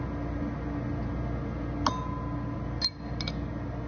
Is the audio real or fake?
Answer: real